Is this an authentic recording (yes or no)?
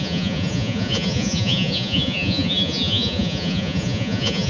no